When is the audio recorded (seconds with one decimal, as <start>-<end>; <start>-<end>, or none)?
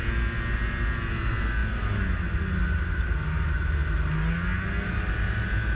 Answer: 0.0-5.7